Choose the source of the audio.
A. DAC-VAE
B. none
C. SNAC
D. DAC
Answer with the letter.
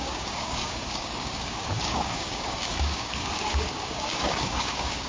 D